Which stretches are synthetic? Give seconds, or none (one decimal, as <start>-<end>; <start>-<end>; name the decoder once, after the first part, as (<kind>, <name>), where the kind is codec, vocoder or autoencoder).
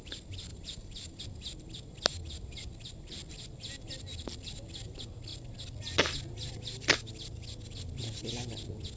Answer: 0.5-1.2 (vocoder, BigVGAN v2)